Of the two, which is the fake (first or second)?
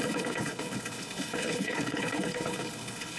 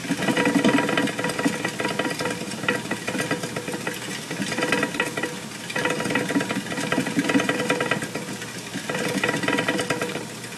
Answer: first